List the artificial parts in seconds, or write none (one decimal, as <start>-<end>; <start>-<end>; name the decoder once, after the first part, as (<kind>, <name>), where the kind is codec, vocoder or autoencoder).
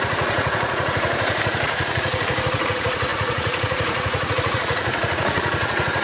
0.0-6.0 (vocoder, Vocos)